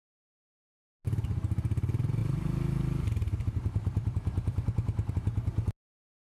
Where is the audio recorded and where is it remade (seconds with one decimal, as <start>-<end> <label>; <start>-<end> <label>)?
0.0-2.2 recorded; 2.2-5.1 remade; 5.1-6.3 recorded